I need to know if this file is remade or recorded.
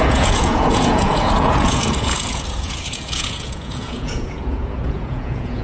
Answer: remade